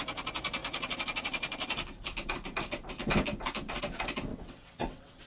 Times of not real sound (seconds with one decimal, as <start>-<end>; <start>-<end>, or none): 4.3-5.3